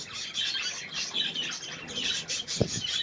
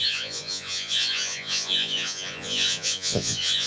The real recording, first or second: first